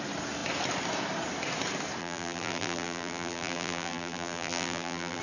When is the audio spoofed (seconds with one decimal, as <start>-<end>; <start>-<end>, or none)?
2.0-5.2